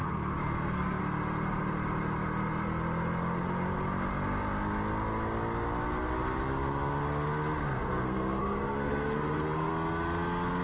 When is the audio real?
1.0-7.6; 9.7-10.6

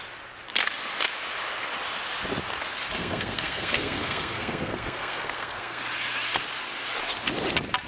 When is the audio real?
0.0-3.0; 5.8-7.9

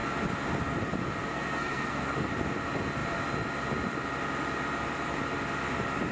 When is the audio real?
0.0-1.3; 2.3-6.1

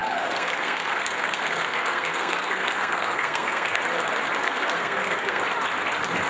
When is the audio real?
3.8-4.4; 5.4-6.3

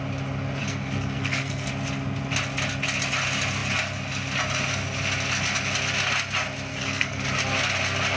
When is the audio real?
0.0-0.6; 1.7-6.7; 7.2-8.2